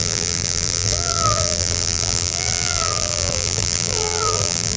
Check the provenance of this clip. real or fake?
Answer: fake